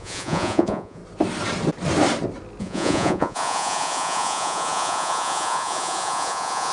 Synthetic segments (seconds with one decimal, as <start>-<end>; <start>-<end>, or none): 0.0-1.0; 2.6-6.7